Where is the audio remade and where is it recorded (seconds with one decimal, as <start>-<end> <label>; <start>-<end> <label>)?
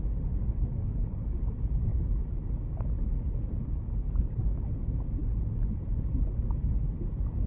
0.0-0.8 recorded; 0.8-1.4 remade; 1.4-3.6 recorded; 3.6-4.3 remade; 4.3-7.5 recorded